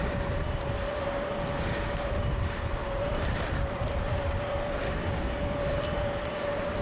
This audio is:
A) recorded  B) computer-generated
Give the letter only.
B